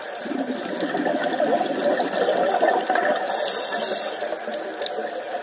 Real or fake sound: real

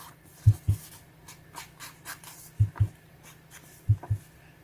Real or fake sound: real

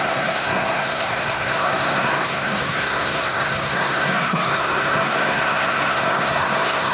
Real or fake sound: fake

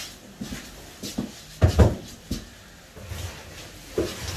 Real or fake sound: real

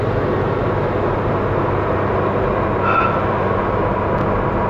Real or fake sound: real